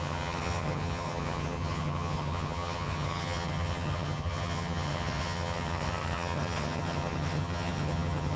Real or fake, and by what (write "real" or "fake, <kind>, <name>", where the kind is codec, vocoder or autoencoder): fake, vocoder, HiFi-GAN